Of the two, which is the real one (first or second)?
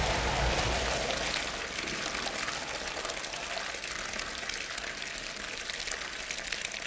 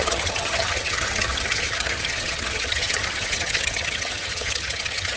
first